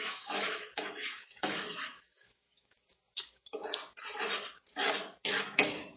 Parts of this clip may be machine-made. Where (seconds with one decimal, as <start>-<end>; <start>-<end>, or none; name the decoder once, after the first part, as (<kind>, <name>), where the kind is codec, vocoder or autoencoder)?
0.0-3.6 (autoencoder, DAC-VAE); 5.4-6.0